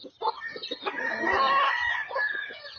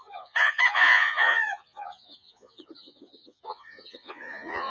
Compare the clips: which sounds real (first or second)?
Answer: first